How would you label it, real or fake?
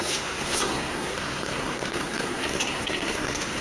fake